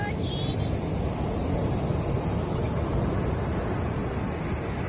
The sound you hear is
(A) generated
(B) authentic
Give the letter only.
B